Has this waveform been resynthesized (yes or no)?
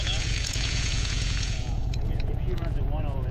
yes